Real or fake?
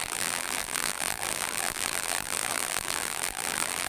fake